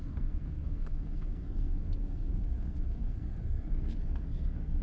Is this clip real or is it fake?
fake